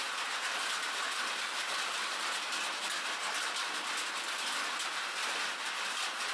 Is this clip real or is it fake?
real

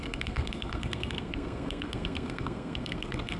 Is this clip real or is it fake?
fake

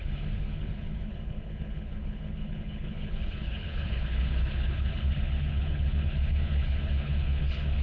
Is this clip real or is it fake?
fake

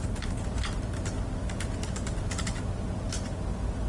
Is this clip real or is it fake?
real